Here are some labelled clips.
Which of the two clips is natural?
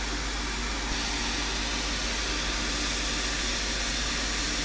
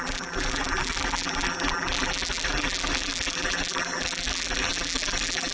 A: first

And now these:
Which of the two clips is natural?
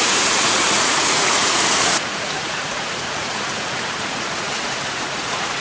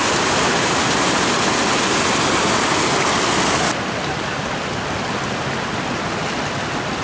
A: second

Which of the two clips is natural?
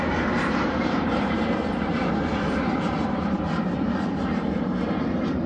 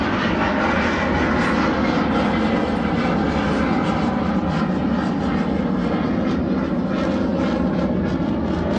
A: second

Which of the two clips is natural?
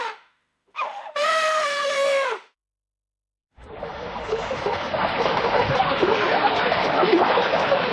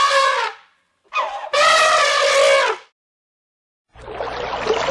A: second